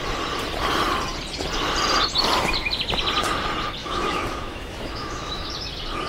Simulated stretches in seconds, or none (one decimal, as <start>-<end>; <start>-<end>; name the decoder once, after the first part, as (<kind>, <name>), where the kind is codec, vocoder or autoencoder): 3.8-5.5 (autoencoder, DAC-VAE)